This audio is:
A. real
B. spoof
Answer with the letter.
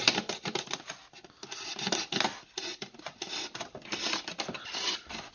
A